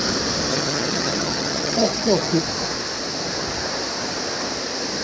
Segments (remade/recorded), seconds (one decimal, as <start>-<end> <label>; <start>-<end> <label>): 0.0-0.5 recorded; 0.5-2.3 remade; 2.3-5.0 recorded

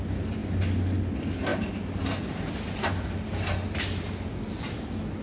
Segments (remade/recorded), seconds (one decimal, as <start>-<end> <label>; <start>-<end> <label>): 0.0-5.2 recorded

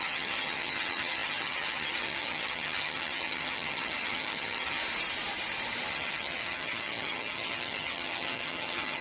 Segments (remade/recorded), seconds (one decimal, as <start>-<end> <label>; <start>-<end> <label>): 0.0-4.8 remade; 4.8-5.9 recorded; 5.9-9.0 remade

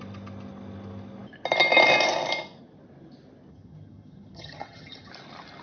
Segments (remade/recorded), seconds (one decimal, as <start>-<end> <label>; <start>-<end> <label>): 0.0-3.5 recorded; 3.5-5.1 remade; 5.1-5.6 recorded

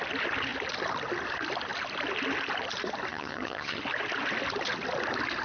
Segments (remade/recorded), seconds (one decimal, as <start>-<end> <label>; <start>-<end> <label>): 0.0-3.1 recorded; 3.1-3.8 remade; 3.8-5.4 recorded